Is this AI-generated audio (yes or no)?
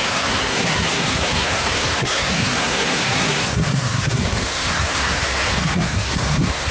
yes